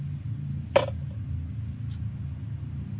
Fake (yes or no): no